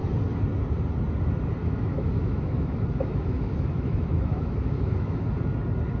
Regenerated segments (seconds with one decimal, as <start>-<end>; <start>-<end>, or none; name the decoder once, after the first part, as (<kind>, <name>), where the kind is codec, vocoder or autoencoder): 1.6-5.2 (autoencoder, DAC-VAE)